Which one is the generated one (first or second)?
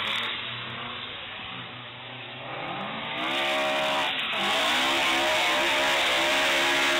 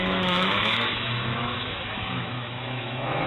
second